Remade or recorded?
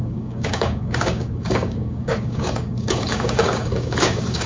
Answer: remade